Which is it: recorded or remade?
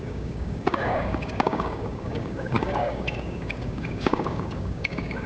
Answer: remade